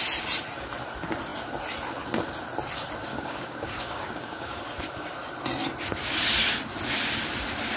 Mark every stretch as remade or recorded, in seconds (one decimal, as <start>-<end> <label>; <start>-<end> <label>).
0.0-3.1 recorded; 3.1-4.6 remade; 4.6-7.8 recorded